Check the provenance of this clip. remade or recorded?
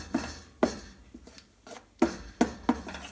recorded